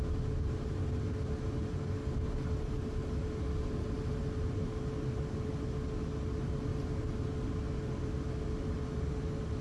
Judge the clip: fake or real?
real